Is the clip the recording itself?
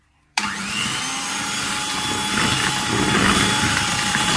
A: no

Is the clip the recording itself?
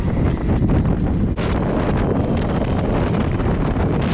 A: yes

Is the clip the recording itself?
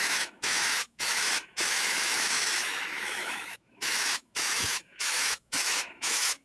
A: no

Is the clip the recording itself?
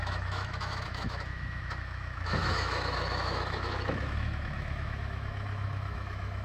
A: no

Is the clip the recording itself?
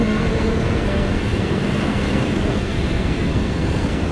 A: no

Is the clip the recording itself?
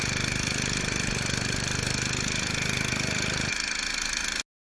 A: yes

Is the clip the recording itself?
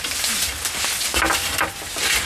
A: yes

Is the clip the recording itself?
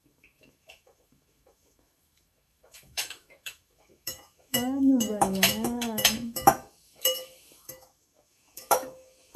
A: no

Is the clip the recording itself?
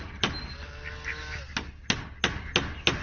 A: yes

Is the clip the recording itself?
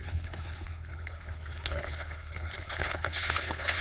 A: no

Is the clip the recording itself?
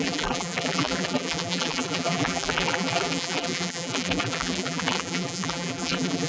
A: no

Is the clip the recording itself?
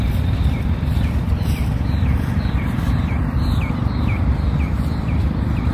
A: no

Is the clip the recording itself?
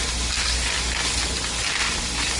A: yes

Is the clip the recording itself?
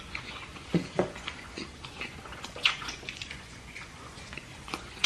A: no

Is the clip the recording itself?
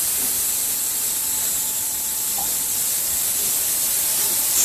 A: no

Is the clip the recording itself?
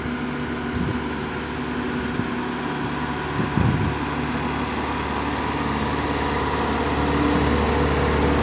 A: yes